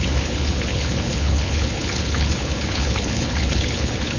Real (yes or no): no